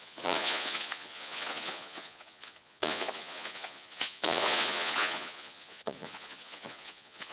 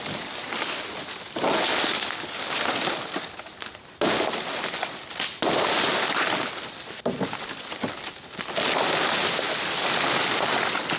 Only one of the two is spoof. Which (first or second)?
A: first